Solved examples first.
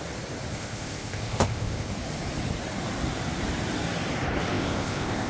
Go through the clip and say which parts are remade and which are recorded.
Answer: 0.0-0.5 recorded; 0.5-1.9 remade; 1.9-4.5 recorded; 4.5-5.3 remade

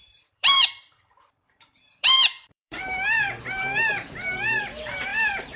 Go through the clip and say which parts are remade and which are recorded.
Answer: 0.0-5.6 remade